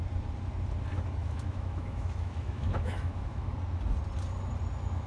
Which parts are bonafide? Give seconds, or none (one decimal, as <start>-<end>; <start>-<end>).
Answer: 0.0-1.2; 3.5-5.1